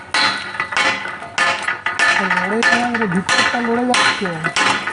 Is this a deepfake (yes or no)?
no